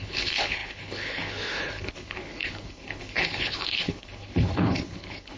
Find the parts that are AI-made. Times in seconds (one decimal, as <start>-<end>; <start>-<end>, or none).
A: 0.0-5.4